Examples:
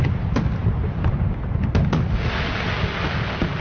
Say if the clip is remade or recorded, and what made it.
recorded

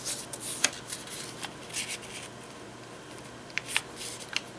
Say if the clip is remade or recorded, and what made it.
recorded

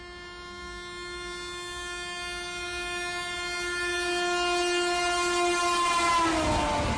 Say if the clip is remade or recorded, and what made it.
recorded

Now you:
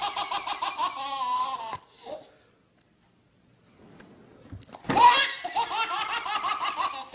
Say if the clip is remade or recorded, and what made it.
recorded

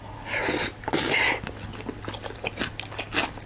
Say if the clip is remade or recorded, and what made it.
recorded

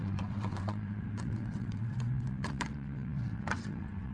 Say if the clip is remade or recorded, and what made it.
remade, vocoder, WaveNeXt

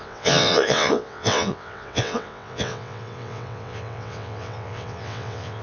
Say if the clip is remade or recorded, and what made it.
remade, vocoder, WaveNeXt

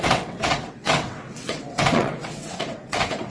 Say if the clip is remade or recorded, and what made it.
remade, vocoder, WaveNeXt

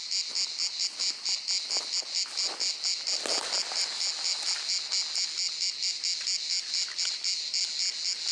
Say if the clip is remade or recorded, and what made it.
recorded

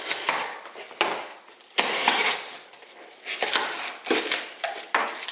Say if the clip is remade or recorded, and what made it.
recorded